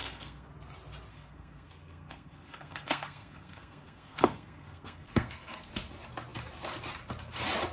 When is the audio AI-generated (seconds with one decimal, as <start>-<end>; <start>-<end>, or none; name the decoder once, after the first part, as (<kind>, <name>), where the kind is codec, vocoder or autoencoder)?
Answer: 0.0-0.5 (codec, SNAC); 1.1-5.7